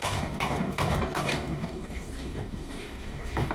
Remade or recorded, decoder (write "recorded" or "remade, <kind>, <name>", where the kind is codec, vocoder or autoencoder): remade, codec, DAC